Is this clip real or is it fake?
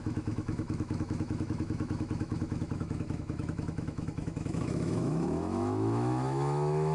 fake